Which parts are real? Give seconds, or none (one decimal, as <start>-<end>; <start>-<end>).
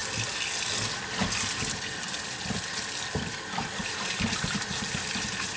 0.0-3.8; 5.1-5.6